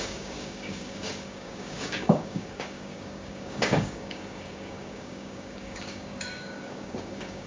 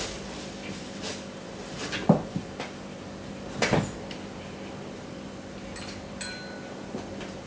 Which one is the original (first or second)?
second